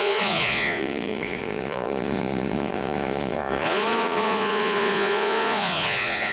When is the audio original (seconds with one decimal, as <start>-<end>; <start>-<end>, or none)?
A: none